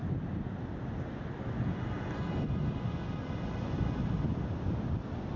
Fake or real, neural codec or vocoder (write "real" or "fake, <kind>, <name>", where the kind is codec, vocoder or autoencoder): real